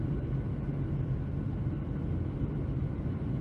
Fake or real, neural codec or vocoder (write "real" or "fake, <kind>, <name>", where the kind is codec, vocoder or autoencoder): real